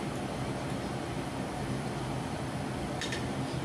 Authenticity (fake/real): real